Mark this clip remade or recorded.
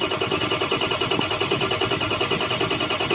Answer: recorded